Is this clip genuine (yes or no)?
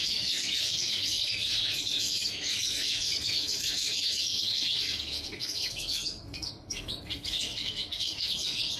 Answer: no